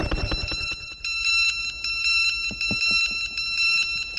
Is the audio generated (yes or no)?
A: yes